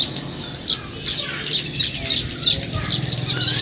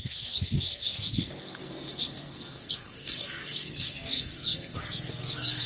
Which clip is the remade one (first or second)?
second